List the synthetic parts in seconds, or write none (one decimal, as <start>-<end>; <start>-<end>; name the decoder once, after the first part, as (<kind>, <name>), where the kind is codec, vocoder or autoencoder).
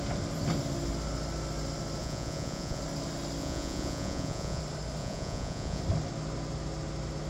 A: 2.0-2.8 (vocoder, Vocos); 3.4-4.6; 5.0-5.8